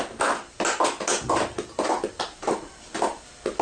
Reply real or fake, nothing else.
real